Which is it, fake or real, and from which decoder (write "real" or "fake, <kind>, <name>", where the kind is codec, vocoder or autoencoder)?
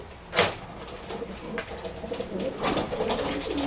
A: real